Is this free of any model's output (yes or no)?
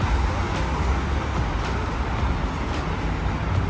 yes